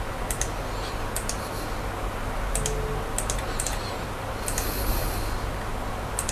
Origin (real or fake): real